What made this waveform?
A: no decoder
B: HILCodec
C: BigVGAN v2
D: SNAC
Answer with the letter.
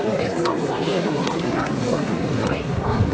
D